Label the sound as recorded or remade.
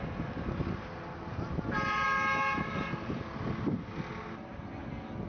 recorded